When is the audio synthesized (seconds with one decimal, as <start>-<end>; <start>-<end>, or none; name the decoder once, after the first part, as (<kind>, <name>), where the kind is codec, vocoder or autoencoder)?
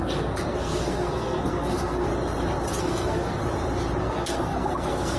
0.0-2.1 (codec, SNAC); 2.8-3.4; 4.0-5.2